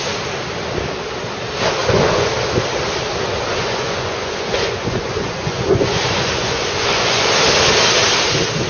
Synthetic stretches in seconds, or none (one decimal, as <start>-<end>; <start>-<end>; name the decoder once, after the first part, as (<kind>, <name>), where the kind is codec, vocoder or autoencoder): 1.8-2.3 (vocoder, Vocos); 3.5-7.3

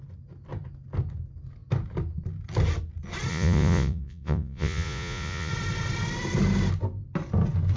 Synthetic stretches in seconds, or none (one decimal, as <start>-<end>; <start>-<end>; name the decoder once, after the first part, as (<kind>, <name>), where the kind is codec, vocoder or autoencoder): 3.3-5.5 (vocoder, Vocos)

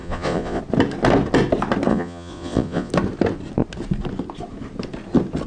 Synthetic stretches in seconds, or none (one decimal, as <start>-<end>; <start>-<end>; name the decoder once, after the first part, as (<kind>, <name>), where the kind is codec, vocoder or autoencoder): 0.0-0.6 (vocoder, Vocos); 1.9-2.9

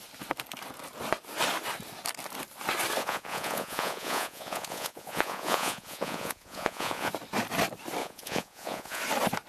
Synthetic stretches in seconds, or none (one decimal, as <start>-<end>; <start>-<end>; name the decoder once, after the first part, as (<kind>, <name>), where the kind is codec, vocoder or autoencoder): 3.0-7.1 (vocoder, Vocos); 8.0-9.0

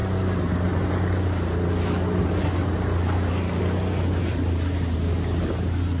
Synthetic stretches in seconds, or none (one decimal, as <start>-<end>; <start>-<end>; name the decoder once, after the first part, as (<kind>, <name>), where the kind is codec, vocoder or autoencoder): none